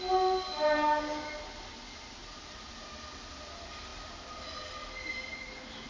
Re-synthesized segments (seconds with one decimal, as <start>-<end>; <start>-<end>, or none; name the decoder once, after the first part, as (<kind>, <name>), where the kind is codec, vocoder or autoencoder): none

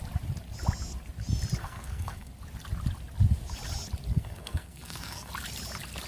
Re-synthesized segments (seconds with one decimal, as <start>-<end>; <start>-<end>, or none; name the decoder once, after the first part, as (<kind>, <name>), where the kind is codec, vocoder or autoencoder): 1.6-2.3 (codec, SNAC); 4.1-5.3

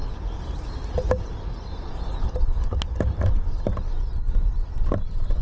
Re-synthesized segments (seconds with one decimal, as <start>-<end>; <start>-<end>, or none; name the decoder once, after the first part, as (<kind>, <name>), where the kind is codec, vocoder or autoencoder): none

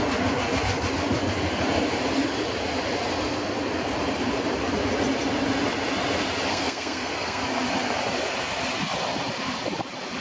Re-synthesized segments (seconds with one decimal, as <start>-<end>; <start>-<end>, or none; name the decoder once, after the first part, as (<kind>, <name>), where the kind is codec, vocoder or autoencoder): 6.5-7.4 (codec, SNAC)